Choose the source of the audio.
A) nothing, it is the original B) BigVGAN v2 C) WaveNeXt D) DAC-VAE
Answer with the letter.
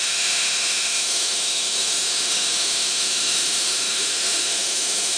D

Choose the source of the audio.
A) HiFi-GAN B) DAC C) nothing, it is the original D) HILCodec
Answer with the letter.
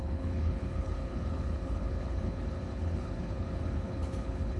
D